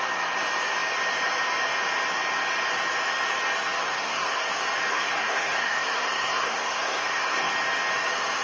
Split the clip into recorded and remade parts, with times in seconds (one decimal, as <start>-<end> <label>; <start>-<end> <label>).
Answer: 0.0-3.8 recorded; 3.8-4.5 remade; 4.5-4.9 recorded; 4.9-7.5 remade; 7.5-8.4 recorded